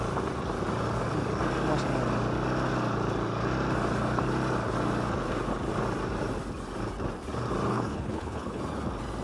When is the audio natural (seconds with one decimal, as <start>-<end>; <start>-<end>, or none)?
0.0-7.7; 8.6-9.2